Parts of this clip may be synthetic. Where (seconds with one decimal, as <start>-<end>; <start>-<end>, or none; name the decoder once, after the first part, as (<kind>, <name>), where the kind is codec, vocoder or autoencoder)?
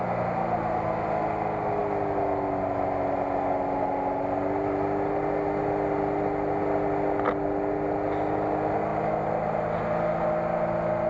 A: none